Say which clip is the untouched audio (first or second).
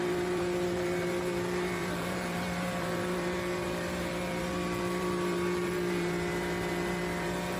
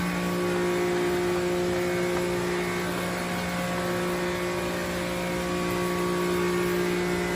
second